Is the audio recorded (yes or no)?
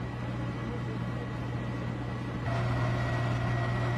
yes